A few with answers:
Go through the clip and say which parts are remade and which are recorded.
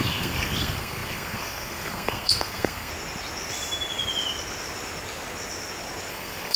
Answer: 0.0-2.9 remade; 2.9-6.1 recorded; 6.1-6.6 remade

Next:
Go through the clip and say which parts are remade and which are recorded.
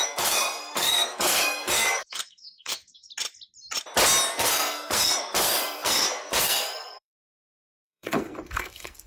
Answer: 0.0-3.1 remade; 3.1-4.3 recorded; 4.3-9.1 remade